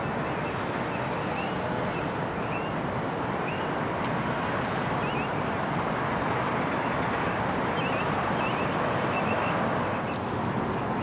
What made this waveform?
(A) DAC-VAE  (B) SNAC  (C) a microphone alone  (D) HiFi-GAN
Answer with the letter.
C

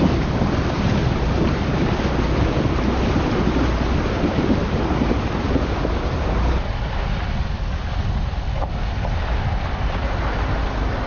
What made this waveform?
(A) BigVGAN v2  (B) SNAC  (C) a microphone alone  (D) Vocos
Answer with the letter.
C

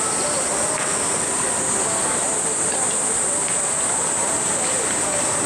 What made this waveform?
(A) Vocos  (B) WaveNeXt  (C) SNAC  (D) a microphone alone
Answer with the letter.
D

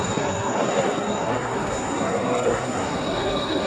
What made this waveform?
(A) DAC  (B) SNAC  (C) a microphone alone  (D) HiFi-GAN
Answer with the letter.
B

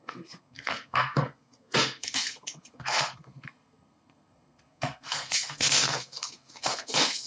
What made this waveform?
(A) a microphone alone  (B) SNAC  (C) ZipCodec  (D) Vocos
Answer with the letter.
B